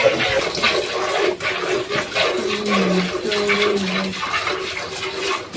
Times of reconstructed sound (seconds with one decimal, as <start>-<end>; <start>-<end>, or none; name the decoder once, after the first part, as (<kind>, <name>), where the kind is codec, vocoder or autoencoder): none

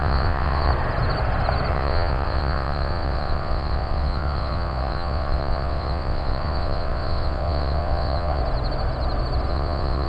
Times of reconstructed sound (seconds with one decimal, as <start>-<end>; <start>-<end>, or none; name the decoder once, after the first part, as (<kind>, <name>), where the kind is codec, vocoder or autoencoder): 0.0-0.7 (vocoder, WaveNeXt); 1.7-8.4; 9.5-10.1

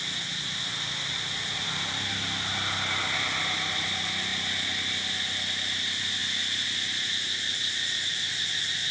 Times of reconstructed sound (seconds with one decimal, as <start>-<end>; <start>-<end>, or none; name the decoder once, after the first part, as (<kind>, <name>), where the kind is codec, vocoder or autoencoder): none

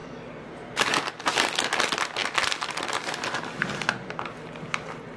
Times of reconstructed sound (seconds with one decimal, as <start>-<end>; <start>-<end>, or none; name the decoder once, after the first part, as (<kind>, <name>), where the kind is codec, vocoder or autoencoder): none

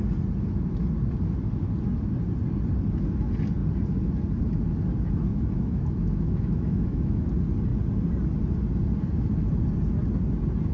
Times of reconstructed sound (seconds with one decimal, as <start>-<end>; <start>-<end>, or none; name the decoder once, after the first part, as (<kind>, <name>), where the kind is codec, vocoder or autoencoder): 5.3-7.3 (autoencoder, DAC-VAE)